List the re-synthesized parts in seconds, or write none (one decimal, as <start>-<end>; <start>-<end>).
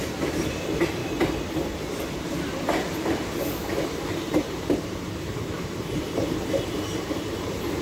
0.0-1.0; 2.1-7.8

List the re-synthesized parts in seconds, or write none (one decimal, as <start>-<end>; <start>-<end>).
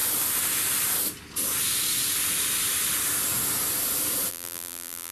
4.3-5.1